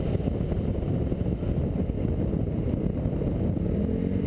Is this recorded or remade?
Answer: recorded